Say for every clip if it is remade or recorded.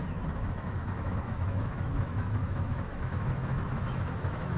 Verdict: remade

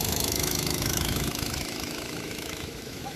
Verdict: remade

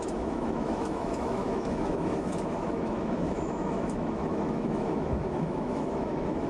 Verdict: remade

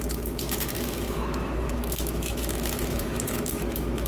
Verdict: remade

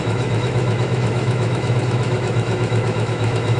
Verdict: remade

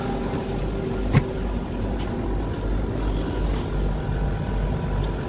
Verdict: recorded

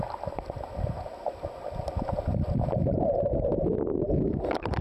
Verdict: recorded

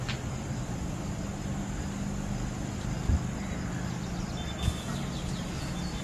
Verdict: recorded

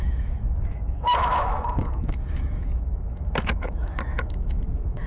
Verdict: remade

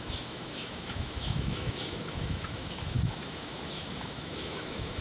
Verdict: remade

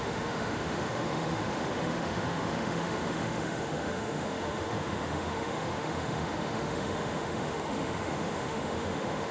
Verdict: remade